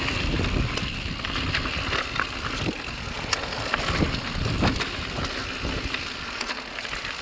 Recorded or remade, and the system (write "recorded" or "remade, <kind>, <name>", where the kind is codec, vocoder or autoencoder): recorded